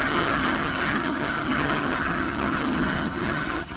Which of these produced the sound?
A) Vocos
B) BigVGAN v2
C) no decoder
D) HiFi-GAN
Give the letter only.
D